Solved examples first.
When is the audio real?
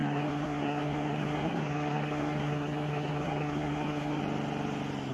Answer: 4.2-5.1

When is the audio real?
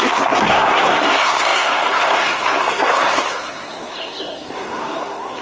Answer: none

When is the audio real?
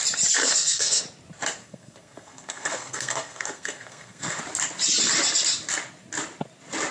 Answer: 0.0-0.4; 1.0-1.6; 4.4-6.9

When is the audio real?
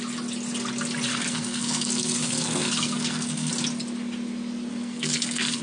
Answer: 0.0-1.1; 3.5-4.7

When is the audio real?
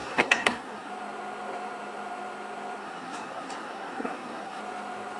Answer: 0.9-2.8; 4.6-5.2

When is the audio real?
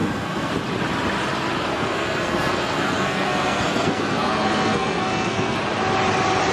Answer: 0.5-1.7; 5.6-6.5